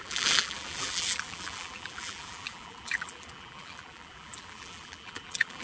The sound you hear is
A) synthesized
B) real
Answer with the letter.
A